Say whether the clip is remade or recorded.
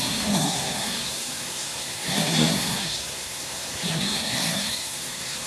remade